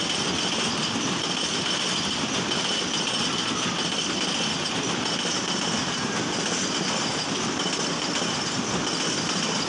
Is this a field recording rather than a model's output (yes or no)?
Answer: yes